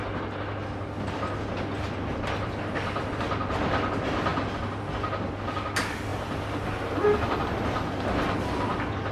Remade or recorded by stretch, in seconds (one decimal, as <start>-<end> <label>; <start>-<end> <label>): 0.0-9.1 recorded